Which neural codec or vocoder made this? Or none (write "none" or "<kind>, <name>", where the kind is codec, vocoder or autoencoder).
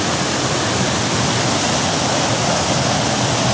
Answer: none